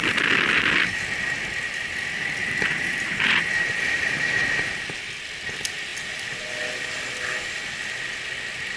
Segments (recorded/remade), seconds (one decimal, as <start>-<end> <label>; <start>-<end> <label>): 0.0-2.4 recorded; 2.4-4.0 remade; 4.0-8.8 recorded